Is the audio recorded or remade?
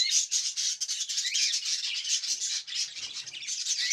recorded